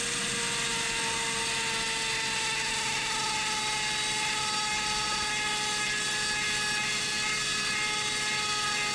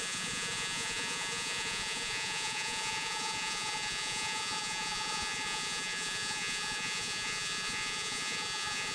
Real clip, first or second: first